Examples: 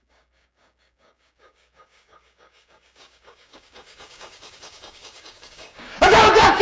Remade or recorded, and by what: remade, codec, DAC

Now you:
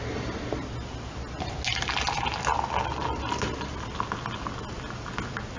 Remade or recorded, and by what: recorded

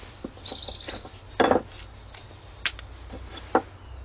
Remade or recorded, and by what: recorded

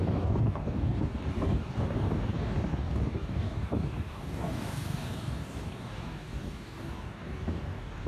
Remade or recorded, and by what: remade, codec, DAC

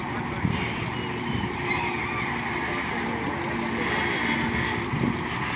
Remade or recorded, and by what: recorded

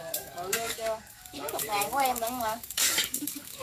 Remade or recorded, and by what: remade, codec, DAC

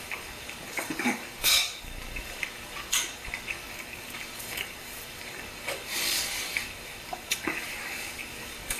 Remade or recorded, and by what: remade, codec, DAC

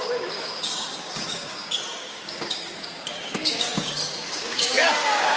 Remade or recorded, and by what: remade, codec, DAC